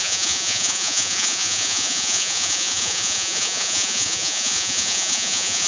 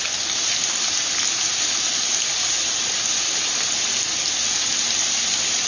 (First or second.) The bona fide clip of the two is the second